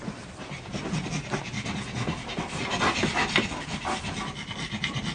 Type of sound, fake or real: real